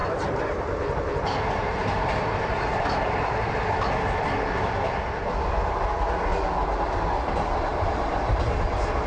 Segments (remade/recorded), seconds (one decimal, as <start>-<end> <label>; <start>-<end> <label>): 0.0-3.5 remade; 3.5-7.7 recorded; 7.7-8.3 remade; 8.3-9.1 recorded